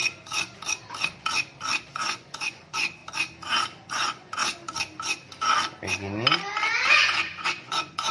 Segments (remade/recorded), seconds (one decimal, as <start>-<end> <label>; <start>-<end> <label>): 0.0-1.9 recorded; 1.9-3.0 remade; 3.0-3.9 recorded; 3.9-4.4 remade; 4.4-6.9 recorded; 6.9-8.1 remade